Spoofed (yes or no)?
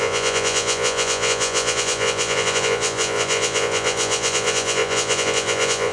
yes